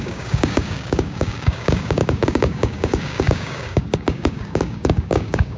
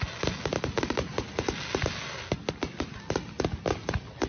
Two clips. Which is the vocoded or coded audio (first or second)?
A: first